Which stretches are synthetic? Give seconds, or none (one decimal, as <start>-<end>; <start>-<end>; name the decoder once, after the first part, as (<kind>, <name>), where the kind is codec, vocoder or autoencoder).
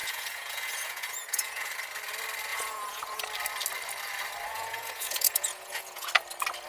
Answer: 0.0-1.7 (vocoder, Vocos); 2.5-3.2; 4.5-6.1